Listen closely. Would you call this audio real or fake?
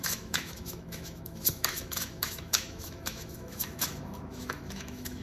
fake